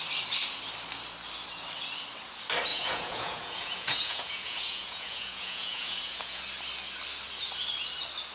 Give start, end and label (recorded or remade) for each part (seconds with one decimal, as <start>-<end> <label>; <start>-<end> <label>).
0.0-2.7 recorded; 2.7-6.4 remade; 6.4-8.3 recorded